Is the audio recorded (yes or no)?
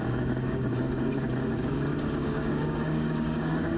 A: no